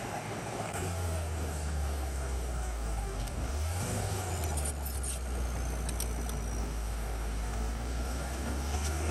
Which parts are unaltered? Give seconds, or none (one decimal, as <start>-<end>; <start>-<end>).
4.3-6.6